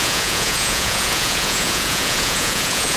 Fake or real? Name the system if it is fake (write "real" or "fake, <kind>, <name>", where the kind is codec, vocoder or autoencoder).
fake, vocoder, Vocos